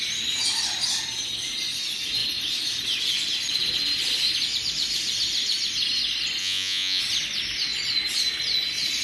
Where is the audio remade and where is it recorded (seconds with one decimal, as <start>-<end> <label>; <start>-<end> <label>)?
0.0-6.4 recorded; 6.4-7.0 remade; 7.0-9.0 recorded